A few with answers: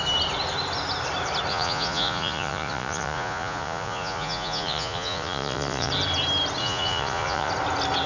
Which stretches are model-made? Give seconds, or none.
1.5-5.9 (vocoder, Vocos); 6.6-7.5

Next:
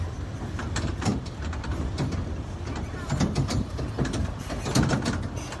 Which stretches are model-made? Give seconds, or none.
none

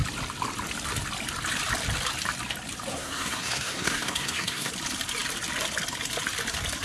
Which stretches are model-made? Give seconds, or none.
2.9-4.7 (codec, SNAC)